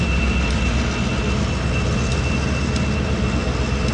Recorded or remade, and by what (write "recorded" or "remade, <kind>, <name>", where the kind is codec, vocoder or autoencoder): recorded